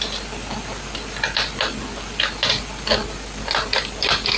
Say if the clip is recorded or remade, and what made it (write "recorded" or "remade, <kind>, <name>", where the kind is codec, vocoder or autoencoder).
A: recorded